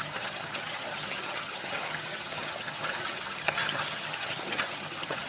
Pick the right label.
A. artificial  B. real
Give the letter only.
A